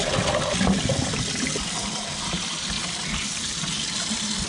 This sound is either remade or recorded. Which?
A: recorded